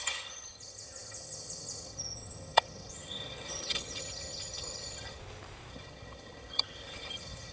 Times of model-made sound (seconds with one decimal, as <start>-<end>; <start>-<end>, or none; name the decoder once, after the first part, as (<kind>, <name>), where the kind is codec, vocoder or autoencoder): 0.0-5.2 (vocoder, HiFi-GAN); 5.7-7.5